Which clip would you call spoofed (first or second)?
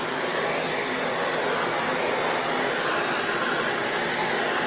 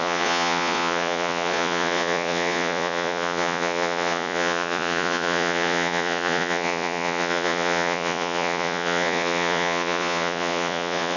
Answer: second